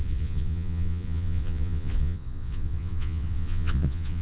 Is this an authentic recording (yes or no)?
no